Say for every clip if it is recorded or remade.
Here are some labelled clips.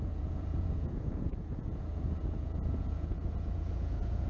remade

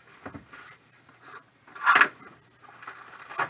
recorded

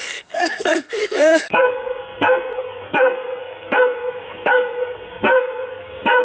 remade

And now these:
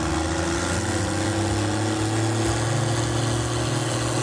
recorded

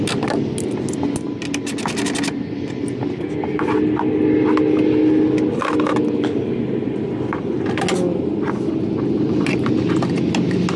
recorded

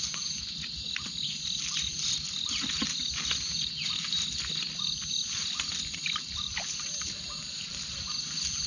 recorded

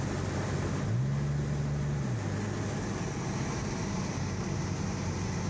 recorded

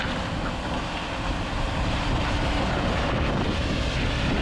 recorded